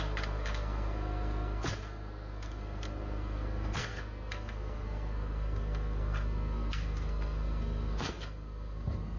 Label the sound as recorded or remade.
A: remade